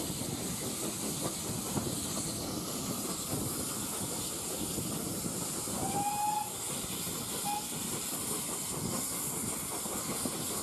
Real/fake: real